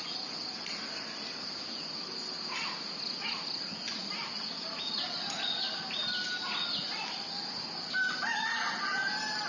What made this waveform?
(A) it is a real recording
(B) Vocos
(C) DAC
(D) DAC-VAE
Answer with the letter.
A